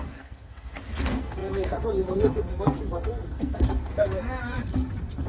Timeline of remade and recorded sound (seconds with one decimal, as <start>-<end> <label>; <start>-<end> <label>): 0.0-5.3 remade